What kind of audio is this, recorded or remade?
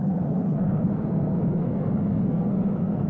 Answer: remade